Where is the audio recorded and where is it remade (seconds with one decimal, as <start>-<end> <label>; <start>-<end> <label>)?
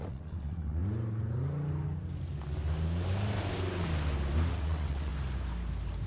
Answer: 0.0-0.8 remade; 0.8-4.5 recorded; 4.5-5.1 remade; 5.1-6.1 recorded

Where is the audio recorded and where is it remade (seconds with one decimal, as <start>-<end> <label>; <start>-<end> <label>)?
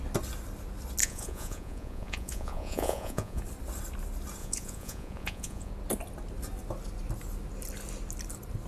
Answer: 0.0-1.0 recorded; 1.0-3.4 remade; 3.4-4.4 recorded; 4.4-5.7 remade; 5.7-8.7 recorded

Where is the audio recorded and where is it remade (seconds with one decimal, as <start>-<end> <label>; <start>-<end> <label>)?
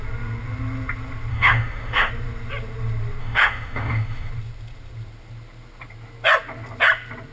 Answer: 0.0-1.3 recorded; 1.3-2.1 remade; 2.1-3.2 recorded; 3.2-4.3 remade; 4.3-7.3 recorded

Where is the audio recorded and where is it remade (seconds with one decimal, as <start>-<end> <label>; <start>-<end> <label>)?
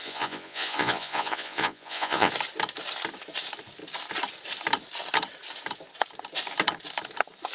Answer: 0.0-2.3 remade; 2.3-7.5 recorded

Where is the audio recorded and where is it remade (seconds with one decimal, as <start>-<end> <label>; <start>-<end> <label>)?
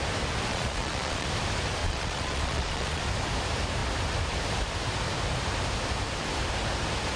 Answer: 0.0-0.5 recorded; 0.5-1.3 remade; 1.3-1.8 recorded; 1.8-3.0 remade; 3.0-7.2 recorded